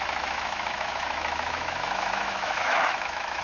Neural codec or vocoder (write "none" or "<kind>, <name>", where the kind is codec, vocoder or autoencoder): autoencoder, DAC-VAE